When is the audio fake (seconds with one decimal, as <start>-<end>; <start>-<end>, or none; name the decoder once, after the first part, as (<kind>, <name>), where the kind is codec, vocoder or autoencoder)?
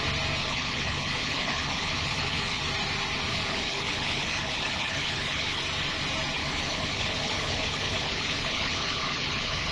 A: 0.4-2.6 (codec, HILCodec); 3.3-5.6; 6.4-9.7